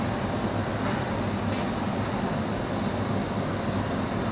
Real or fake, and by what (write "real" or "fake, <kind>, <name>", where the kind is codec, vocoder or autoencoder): real